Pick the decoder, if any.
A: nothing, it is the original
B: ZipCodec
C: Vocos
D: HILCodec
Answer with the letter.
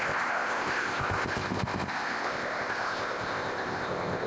B